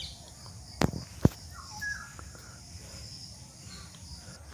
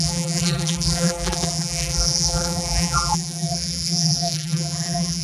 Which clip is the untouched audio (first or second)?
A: first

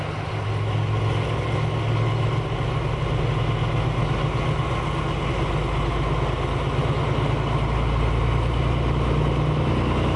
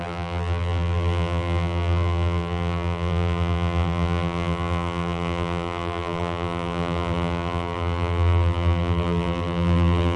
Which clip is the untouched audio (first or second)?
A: first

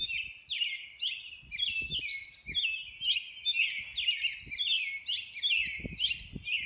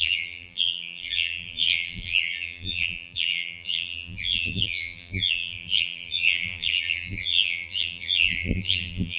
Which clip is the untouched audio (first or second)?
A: first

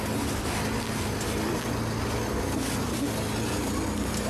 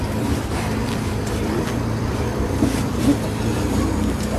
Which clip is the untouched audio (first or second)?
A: first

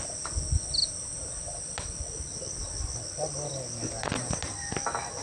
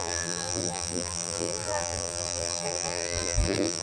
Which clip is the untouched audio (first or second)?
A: first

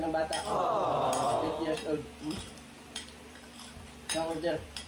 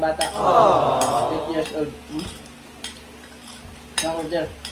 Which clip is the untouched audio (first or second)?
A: second